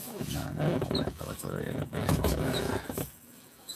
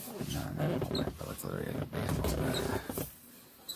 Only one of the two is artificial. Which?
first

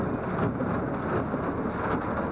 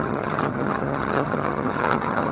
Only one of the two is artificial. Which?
second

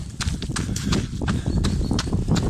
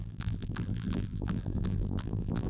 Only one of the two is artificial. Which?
second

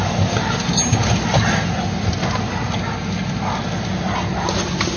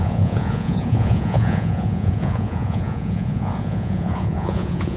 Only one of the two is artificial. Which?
second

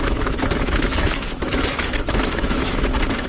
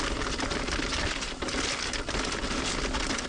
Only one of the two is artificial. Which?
first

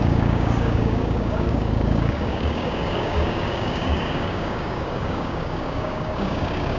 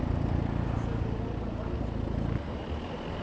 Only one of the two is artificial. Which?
first